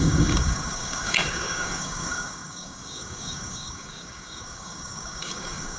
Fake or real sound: fake